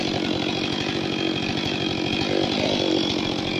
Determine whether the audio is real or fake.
real